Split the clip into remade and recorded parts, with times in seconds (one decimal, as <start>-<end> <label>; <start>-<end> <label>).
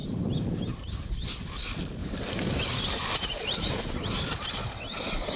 0.0-1.1 remade; 1.1-2.0 recorded; 2.0-3.3 remade; 3.3-5.4 recorded